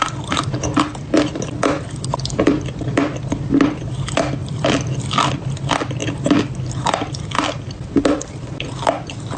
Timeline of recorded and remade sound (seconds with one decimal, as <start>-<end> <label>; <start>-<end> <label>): 0.0-4.4 recorded; 4.4-5.4 remade; 5.4-9.4 recorded

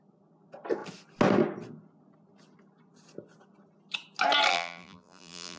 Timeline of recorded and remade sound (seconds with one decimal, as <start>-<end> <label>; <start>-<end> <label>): 0.0-4.5 recorded; 4.5-5.6 remade

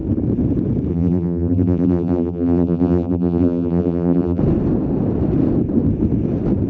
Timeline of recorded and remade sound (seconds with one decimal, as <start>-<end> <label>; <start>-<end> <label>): 0.0-0.9 recorded; 0.9-4.4 remade; 4.4-6.7 recorded